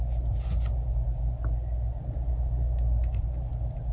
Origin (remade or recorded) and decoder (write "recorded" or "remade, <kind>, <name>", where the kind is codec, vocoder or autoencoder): recorded